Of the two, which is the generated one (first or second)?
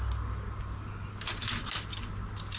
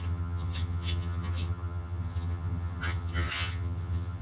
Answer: second